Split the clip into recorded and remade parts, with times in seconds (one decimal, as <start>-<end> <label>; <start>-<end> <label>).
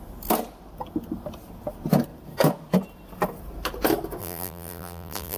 0.0-4.2 recorded; 4.2-5.4 remade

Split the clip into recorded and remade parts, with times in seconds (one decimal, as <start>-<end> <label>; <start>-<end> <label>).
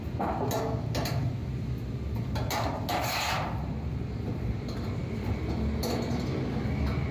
0.0-7.1 recorded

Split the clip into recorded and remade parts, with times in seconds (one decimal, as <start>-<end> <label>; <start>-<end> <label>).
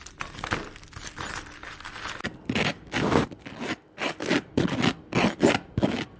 0.0-6.2 recorded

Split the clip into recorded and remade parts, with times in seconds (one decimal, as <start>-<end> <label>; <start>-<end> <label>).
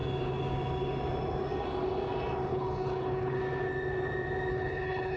0.0-2.5 recorded; 2.5-3.4 remade; 3.4-4.5 recorded; 4.5-5.2 remade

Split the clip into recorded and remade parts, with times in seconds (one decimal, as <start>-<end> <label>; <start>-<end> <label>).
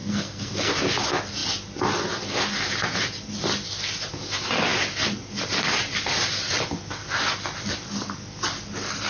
0.0-0.7 remade; 0.7-9.1 recorded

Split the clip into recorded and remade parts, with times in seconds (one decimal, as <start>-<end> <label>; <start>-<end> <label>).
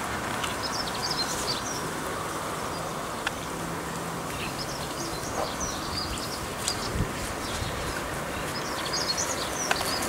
0.0-10.1 recorded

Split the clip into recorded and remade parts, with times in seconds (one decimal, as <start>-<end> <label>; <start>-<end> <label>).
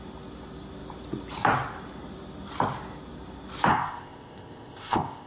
0.0-3.7 recorded; 3.7-5.3 remade